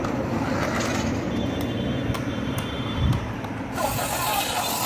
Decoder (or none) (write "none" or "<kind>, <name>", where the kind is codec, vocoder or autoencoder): none